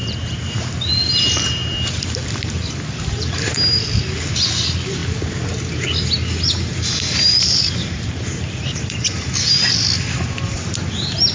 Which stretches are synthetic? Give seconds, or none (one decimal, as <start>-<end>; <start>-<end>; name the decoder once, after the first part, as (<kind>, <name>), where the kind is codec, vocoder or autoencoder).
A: 0.0-0.6 (vocoder, BigVGAN v2); 6.7-9.1